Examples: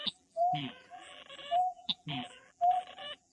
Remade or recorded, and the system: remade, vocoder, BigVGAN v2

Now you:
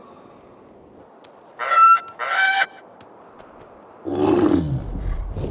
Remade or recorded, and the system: recorded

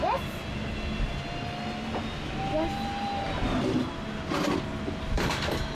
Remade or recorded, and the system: recorded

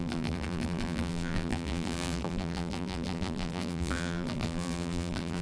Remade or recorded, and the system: remade, vocoder, BigVGAN v2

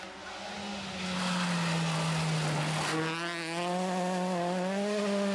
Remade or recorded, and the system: recorded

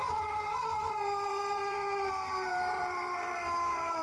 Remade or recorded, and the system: remade, vocoder, BigVGAN v2